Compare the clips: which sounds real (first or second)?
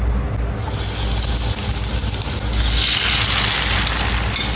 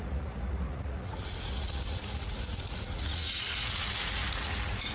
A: first